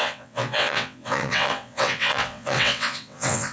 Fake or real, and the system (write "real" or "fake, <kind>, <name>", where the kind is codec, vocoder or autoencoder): fake, vocoder, WaveNeXt